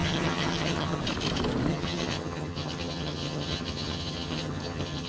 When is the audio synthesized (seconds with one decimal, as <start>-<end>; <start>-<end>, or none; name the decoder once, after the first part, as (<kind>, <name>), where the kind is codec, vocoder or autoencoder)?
0.0-1.0 (vocoder, HiFi-GAN); 1.7-5.1